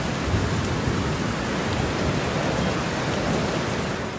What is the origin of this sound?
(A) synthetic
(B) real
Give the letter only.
B